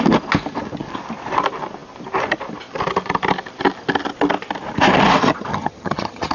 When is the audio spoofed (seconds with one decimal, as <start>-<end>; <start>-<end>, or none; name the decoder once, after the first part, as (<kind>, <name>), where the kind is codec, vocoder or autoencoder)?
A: 5.5-6.3 (vocoder, HiFi-GAN)